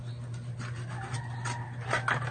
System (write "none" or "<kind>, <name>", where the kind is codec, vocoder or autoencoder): none